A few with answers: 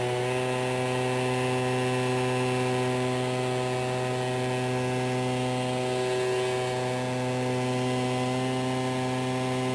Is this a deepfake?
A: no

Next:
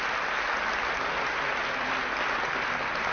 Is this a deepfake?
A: no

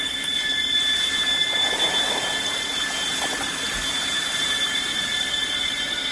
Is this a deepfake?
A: no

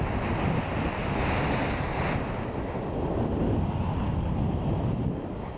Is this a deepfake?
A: no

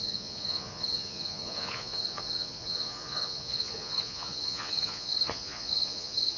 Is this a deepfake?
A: yes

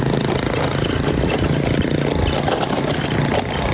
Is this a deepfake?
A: no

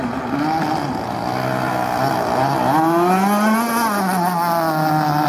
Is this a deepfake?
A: no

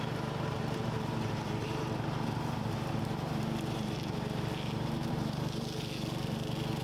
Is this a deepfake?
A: yes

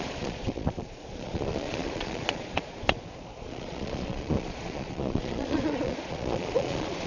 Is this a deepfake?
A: yes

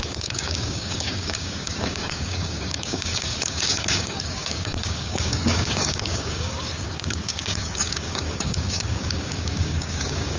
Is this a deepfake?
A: yes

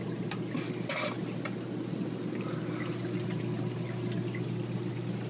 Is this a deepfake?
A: no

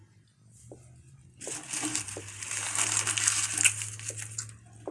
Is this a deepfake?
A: no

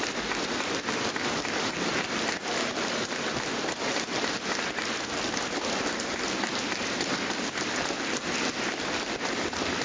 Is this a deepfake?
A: no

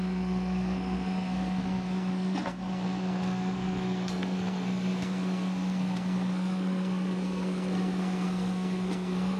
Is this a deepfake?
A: yes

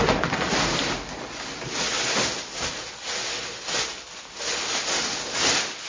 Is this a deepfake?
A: no